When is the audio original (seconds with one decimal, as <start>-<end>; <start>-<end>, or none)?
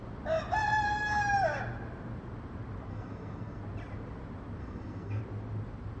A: 0.0-2.9; 3.6-4.6; 5.2-6.0